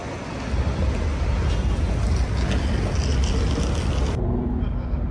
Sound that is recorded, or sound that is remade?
recorded